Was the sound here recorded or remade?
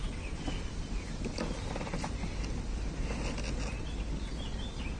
recorded